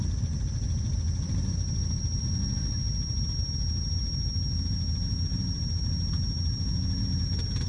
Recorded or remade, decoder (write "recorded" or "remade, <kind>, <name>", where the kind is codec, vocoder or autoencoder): recorded